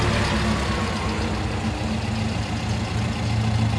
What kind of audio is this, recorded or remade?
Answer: recorded